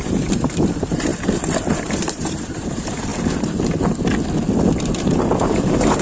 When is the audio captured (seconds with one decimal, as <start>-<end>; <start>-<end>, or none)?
1.1-1.8; 3.1-5.2